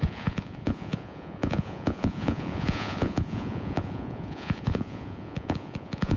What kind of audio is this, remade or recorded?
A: remade